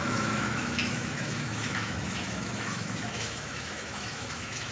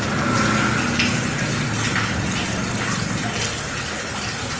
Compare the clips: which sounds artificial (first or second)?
first